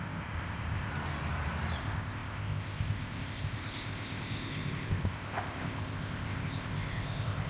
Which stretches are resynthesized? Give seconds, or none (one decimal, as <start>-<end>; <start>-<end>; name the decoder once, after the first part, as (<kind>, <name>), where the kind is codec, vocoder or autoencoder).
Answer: 0.0-0.9 (codec, ZipCodec); 1.8-7.5

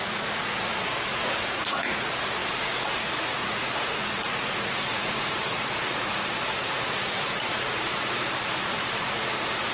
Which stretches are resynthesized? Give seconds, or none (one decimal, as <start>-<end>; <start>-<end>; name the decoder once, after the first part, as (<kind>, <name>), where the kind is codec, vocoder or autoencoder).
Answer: 0.0-9.7 (vocoder, Vocos)

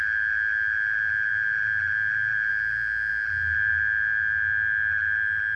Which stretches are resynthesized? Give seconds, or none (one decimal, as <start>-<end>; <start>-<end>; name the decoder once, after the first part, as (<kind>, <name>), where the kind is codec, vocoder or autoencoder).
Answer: none

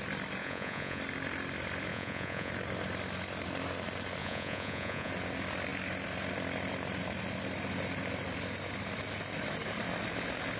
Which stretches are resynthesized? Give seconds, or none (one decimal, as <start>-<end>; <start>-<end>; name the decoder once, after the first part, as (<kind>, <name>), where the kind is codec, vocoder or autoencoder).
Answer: 0.4-1.0 (vocoder, Vocos); 1.9-2.5; 4.2-5.1

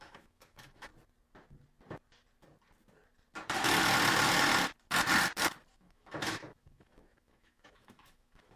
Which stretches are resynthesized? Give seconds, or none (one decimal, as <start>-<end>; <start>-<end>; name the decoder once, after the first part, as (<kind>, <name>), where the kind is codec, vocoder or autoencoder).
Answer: 0.0-0.9 (autoencoder, DAC-VAE); 5.7-8.6

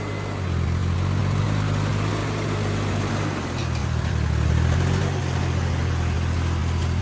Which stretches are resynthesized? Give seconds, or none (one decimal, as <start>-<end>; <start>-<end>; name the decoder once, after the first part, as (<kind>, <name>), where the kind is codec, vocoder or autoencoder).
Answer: 2.2-3.1 (vocoder, BigVGAN v2); 3.8-5.8

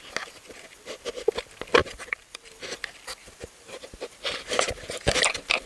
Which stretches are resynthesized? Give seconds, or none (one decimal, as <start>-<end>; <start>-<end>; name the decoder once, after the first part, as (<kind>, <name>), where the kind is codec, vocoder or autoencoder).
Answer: 1.8-2.5 (vocoder, BigVGAN v2); 3.2-5.7

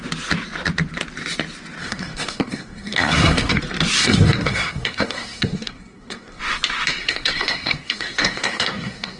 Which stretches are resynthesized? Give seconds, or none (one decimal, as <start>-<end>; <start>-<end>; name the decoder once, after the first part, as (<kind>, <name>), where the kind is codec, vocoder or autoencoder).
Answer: 1.8-3.6 (codec, SNAC); 4.0-6.4; 7.0-9.2